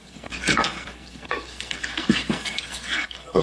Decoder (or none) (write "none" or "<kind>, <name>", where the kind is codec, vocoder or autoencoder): codec, SNAC